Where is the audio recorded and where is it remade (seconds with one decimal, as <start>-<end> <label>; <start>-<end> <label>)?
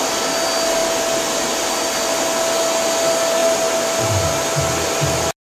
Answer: 0.0-5.6 recorded